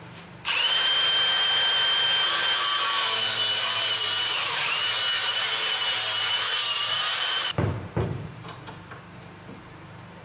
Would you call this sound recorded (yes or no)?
no